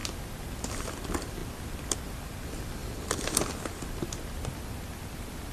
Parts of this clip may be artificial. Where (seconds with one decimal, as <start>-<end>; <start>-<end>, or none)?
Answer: none